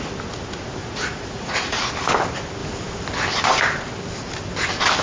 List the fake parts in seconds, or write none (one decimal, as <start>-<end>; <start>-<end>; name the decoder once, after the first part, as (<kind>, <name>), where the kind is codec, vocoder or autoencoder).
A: 0.8-1.9 (vocoder, Vocos)